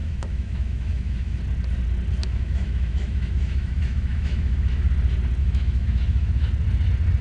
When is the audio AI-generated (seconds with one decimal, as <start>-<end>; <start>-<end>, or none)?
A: 0.0-1.4; 2.2-4.9; 5.4-6.5